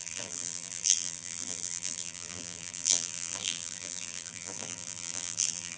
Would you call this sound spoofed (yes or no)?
yes